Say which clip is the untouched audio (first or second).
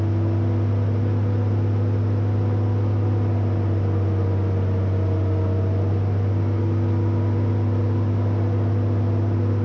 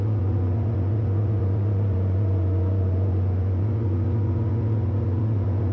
first